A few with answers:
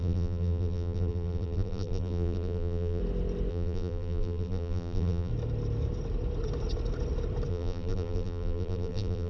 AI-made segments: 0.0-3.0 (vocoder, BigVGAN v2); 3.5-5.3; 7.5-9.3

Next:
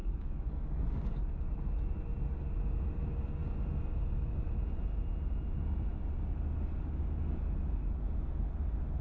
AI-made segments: 0.0-1.5 (codec, DAC)

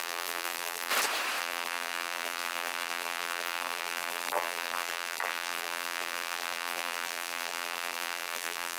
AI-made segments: 0.0-0.9 (vocoder, BigVGAN v2); 1.4-8.8

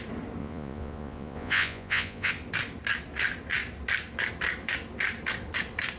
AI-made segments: 0.4-2.3 (vocoder, Vocos)

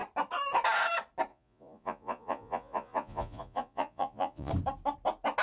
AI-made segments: 1.3-4.5 (vocoder, Vocos)